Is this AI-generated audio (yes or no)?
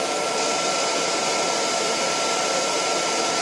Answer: no